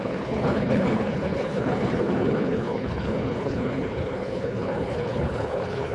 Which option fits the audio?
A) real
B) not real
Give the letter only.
B